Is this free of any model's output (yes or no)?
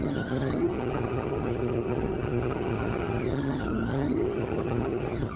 no